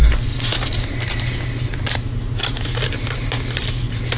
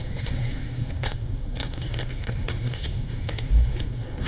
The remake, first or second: second